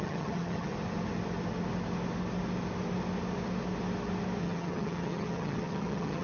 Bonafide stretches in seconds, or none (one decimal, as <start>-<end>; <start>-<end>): 0.7-4.4